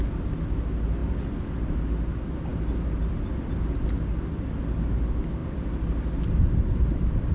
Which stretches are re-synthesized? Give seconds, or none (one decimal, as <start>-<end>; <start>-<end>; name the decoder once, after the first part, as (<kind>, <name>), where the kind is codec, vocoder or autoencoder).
5.4-7.3 (vocoder, BigVGAN v2)